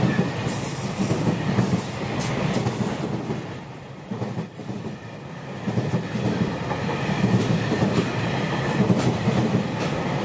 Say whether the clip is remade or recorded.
recorded